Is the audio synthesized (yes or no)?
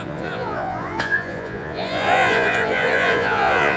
yes